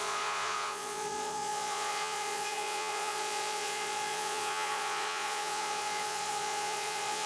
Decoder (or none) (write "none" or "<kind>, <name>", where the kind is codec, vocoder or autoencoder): vocoder, Vocos